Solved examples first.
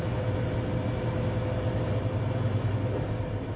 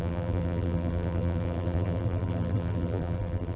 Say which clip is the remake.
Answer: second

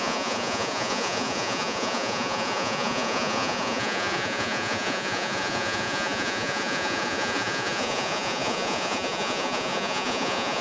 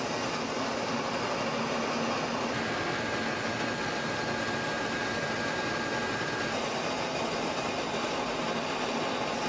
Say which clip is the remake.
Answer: first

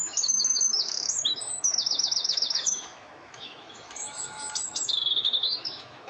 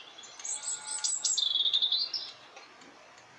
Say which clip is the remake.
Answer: first